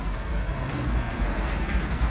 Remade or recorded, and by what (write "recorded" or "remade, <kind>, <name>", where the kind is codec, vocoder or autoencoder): remade, codec, SNAC